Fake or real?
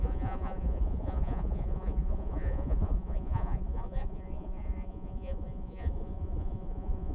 fake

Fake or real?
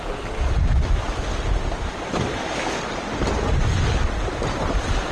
real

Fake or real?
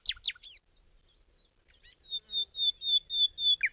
real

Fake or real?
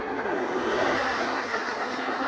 fake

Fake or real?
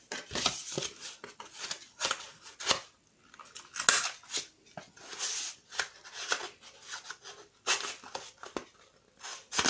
real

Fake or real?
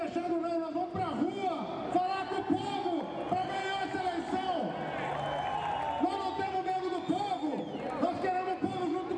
real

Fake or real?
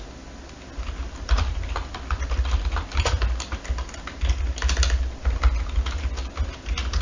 real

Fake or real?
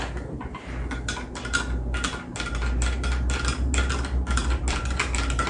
real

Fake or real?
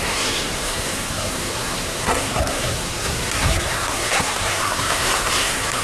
fake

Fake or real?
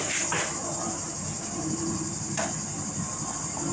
real